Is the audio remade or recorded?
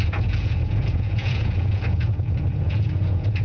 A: remade